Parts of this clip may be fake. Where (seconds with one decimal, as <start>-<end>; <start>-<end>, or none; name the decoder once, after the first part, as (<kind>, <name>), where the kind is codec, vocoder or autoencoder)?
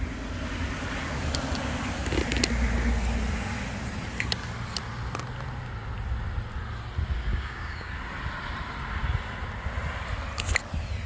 7.3-7.9 (codec, DAC)